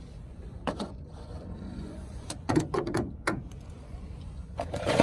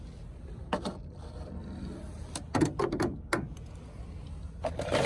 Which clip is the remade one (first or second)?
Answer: first